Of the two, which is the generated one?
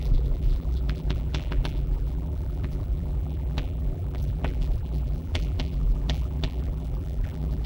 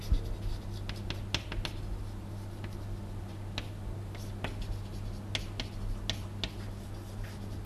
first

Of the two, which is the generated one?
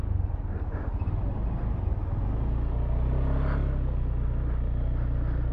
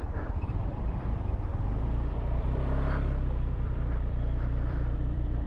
second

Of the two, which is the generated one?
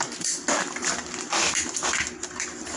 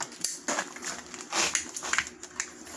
first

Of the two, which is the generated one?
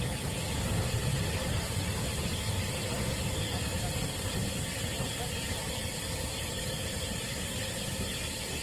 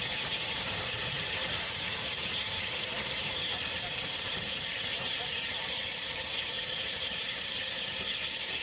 second